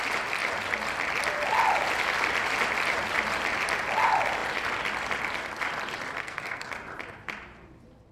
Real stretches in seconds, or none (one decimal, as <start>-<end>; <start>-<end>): 0.0-6.2; 6.7-8.1